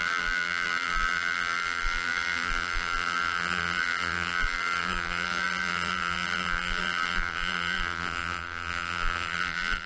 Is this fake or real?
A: fake